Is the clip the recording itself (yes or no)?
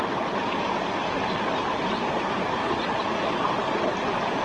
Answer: yes